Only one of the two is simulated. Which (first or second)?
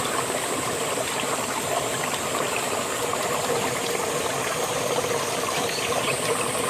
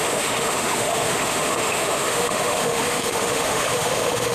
second